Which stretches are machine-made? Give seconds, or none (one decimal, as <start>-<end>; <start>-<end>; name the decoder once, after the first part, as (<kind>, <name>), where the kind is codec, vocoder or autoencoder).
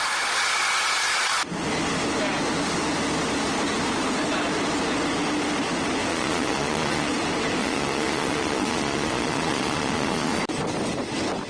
6.1-7.1 (vocoder, Vocos); 7.6-10.4